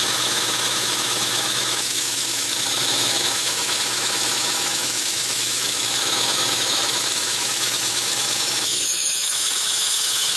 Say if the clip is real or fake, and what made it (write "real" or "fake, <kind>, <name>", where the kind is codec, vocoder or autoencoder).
fake, autoencoder, DAC-VAE